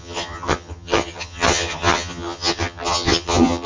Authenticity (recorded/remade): remade